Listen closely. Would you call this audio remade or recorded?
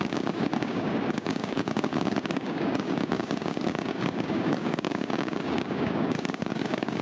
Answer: remade